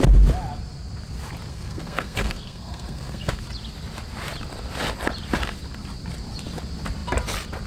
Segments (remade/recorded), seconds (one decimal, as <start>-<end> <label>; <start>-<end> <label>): 0.0-1.5 recorded; 1.5-3.4 remade; 3.4-7.7 recorded